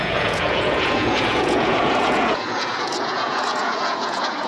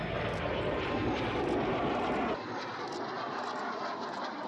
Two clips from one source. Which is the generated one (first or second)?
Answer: first